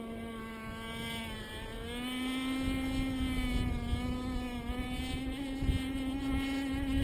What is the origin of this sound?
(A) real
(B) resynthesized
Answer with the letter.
A